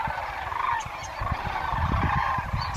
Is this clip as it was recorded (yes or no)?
yes